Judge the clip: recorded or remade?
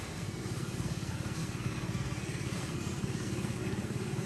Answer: remade